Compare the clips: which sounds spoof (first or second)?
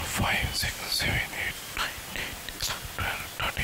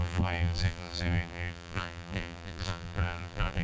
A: second